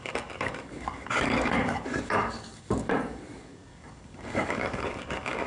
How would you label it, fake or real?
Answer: fake